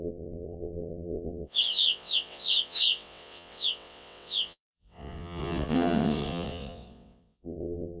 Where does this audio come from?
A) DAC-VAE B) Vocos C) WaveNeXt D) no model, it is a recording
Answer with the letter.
C